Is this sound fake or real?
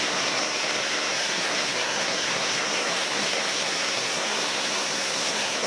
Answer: fake